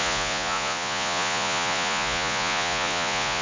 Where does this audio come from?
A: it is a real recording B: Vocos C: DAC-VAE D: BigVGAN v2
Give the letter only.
B